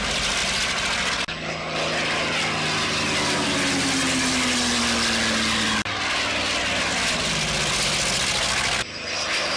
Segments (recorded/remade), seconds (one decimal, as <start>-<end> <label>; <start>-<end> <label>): 0.0-9.6 recorded